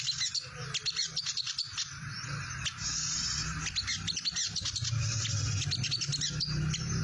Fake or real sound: real